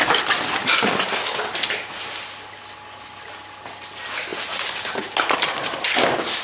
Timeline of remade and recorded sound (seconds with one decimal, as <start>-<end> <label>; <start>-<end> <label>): 0.0-6.4 recorded